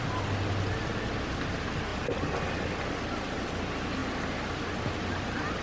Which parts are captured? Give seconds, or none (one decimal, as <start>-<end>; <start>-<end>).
0.0-5.6